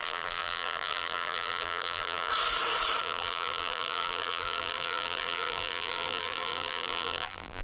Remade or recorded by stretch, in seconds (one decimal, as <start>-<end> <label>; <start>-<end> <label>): 0.0-2.3 remade; 2.3-3.0 recorded; 3.0-7.6 remade